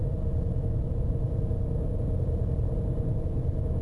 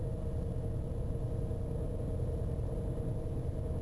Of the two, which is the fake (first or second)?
first